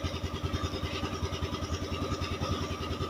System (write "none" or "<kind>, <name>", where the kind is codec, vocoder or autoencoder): none